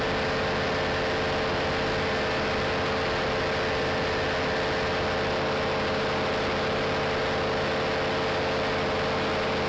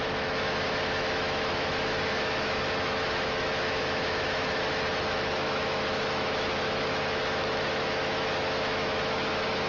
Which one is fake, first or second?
second